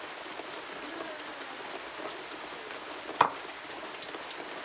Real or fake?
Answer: real